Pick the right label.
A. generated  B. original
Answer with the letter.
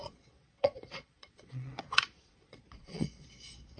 A